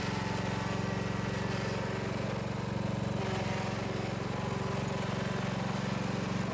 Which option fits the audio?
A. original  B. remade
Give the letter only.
A